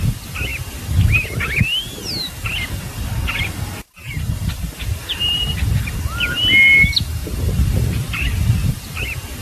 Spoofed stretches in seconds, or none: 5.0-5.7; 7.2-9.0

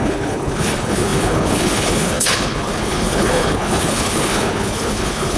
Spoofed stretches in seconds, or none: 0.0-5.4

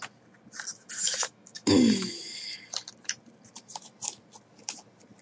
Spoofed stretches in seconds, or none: 0.7-2.3

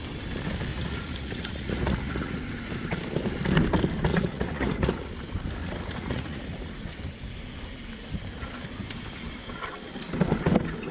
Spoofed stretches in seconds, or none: 0.7-2.4; 4.1-5.1; 5.6-6.9